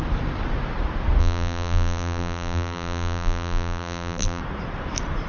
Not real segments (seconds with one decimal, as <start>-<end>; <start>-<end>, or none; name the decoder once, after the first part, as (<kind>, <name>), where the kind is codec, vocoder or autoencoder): 1.2-4.4 (vocoder, BigVGAN v2)